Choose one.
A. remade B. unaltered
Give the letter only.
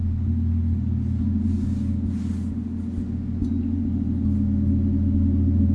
B